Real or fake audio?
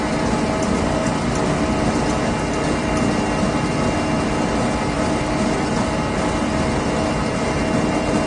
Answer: real